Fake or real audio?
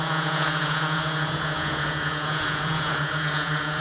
fake